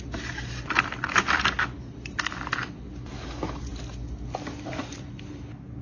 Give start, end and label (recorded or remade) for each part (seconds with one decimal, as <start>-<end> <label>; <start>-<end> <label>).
0.0-5.8 recorded